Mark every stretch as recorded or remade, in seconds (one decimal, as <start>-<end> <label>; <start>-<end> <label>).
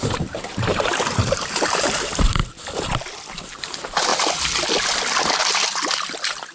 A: 0.0-2.4 remade; 2.4-3.5 recorded; 3.5-4.1 remade; 4.1-5.3 recorded; 5.3-6.5 remade